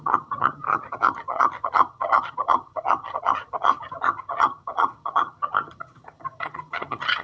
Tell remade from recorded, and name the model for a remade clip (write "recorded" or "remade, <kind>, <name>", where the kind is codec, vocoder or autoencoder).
remade, vocoder, HiFi-GAN